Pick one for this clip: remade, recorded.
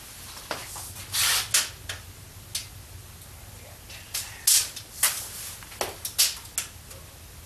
recorded